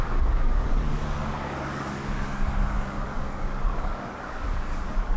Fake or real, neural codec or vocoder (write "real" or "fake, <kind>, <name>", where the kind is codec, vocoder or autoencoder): fake, codec, DAC